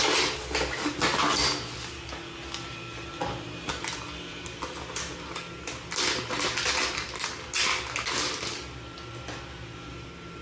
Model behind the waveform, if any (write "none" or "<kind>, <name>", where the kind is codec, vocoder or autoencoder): none